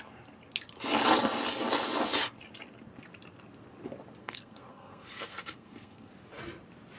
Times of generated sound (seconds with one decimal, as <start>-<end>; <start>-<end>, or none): 4.2-6.1